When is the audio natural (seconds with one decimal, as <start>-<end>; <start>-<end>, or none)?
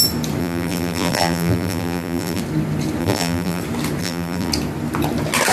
0.0-0.4; 2.4-3.0; 3.6-4.0; 4.5-5.5